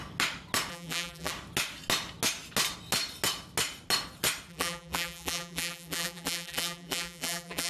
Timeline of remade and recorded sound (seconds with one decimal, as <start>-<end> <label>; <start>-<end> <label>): 0.0-0.7 recorded; 0.7-1.3 remade; 1.3-4.5 recorded; 4.5-7.7 remade